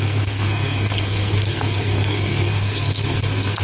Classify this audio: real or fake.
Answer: fake